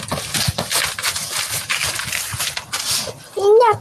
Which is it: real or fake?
real